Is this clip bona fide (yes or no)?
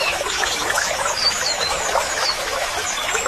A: no